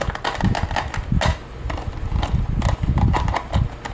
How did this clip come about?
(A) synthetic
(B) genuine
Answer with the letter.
B